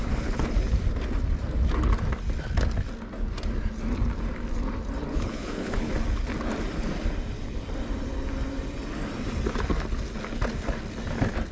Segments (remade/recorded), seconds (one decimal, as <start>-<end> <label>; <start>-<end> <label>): 0.0-0.5 remade; 0.5-5.1 recorded; 5.1-5.9 remade; 5.9-11.5 recorded